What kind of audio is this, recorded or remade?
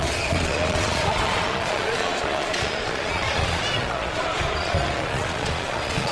remade